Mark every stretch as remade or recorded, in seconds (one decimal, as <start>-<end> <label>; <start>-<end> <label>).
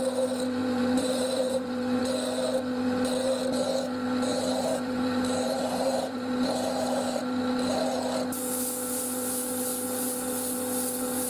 0.0-0.6 recorded; 0.6-2.0 remade; 2.0-4.3 recorded; 4.3-7.2 remade; 7.2-11.3 recorded